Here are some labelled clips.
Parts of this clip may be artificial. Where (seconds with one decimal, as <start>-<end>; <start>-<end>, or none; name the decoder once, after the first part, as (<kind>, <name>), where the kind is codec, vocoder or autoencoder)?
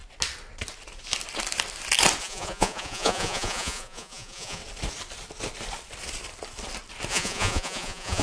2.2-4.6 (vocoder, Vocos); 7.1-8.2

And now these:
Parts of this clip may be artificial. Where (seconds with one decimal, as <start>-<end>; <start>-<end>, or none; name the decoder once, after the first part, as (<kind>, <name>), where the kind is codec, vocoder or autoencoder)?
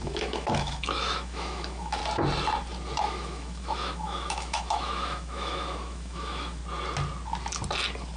0.0-2.0 (autoencoder, DAC-VAE); 3.0-6.6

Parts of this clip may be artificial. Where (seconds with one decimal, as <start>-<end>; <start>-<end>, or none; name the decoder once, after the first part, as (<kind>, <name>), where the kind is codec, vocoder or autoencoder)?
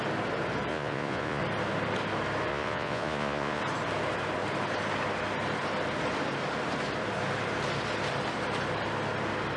0.7-1.4 (vocoder, Vocos); 2.5-3.6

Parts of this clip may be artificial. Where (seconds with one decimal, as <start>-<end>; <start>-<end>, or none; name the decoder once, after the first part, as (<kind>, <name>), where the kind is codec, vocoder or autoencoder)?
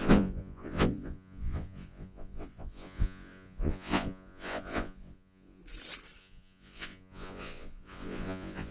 0.0-5.6 (vocoder, Vocos); 6.2-8.7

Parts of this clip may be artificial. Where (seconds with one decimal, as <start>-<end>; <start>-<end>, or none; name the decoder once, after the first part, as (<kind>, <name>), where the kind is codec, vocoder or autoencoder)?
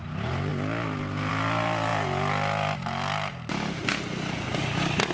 none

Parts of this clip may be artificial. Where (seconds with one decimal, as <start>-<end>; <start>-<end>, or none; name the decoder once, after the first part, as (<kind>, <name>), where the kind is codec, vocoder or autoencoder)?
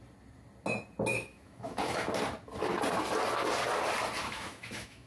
1.1-2.1 (autoencoder, DAC-VAE); 4.2-5.1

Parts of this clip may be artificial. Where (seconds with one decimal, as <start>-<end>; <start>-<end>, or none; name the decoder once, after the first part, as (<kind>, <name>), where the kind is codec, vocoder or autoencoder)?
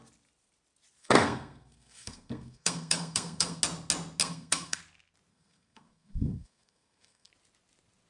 1.0-3.6 (codec, SNAC); 4.2-4.8; 5.3-7.3